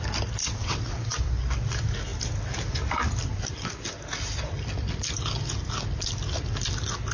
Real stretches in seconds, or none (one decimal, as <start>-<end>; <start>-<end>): 0.0-0.4; 1.3-7.1